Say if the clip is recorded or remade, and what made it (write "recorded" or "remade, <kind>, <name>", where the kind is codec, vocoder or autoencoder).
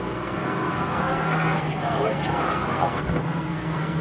remade, codec, SNAC